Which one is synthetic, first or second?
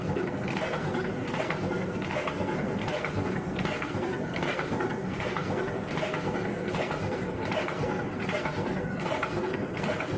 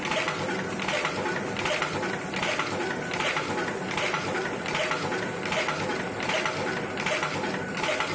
first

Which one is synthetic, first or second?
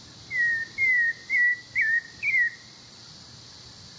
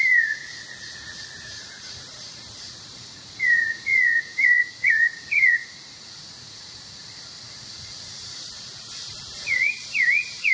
second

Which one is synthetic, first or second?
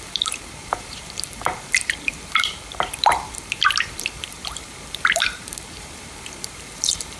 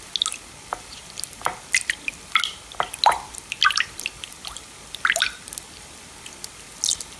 first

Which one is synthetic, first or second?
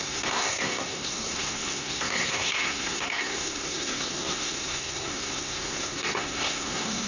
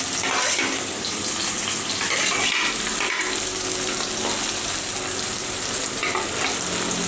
first